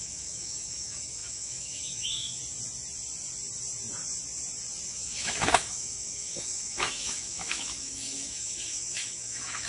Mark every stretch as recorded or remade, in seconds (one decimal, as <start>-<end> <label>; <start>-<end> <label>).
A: 0.0-2.4 remade; 2.4-4.9 recorded; 4.9-9.7 remade